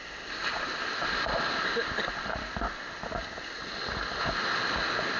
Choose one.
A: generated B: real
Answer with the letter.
B